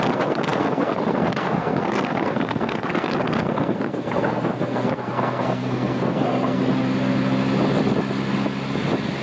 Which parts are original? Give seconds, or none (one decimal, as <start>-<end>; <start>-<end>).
6.6-9.2